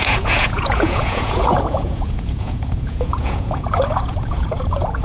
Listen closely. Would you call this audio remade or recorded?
remade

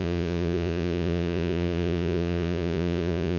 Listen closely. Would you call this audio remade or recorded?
remade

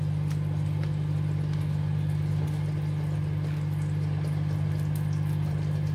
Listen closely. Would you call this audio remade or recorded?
recorded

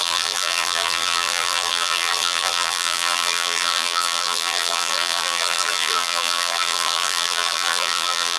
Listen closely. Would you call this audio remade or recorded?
remade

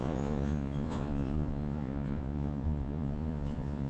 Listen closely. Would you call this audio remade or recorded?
remade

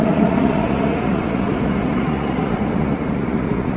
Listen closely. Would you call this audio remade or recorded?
remade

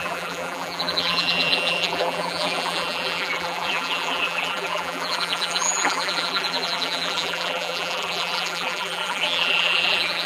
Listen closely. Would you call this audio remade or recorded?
remade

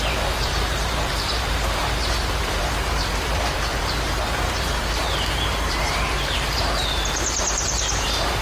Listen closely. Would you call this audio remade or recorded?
remade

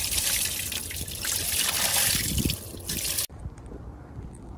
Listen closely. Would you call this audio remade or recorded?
remade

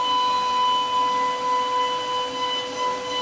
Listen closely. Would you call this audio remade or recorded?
recorded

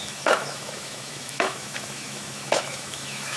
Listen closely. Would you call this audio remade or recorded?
remade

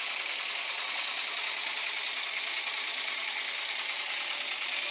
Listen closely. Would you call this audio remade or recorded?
recorded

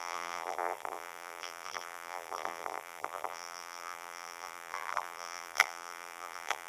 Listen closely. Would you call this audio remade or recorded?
remade